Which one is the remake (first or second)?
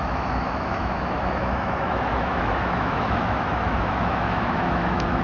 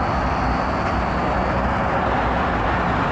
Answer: first